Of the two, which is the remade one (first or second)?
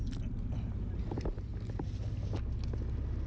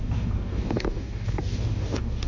second